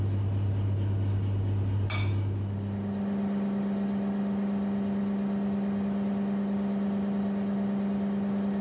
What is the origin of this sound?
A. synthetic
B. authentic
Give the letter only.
B